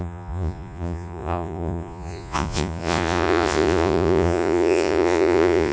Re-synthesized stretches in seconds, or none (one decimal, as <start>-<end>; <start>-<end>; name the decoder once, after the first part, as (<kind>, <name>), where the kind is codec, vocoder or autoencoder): 0.0-5.7 (vocoder, Vocos)